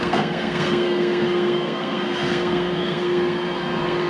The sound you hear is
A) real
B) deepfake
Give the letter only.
B